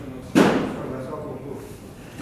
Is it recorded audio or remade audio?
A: recorded